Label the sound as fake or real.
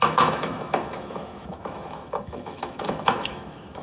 fake